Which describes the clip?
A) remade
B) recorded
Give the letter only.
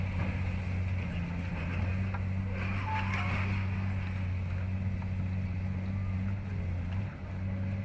B